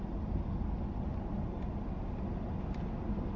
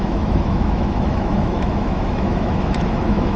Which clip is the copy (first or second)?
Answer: second